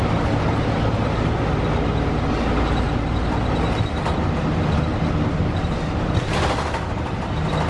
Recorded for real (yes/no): yes